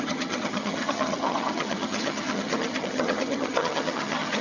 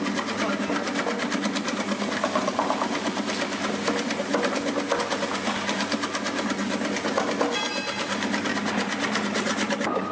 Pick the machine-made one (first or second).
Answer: first